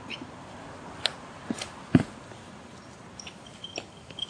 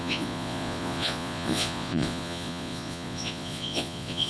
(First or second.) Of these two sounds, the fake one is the second